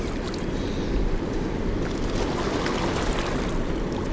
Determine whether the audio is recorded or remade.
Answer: recorded